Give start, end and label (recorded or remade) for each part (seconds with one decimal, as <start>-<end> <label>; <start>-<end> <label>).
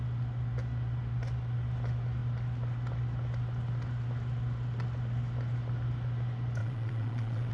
0.0-6.6 recorded; 6.6-7.5 remade